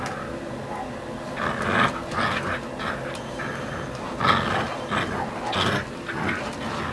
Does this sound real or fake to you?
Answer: real